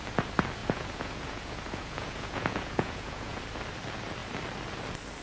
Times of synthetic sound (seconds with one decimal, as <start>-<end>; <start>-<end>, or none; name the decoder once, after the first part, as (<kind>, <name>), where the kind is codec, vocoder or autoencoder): 0.6-3.4 (vocoder, Vocos)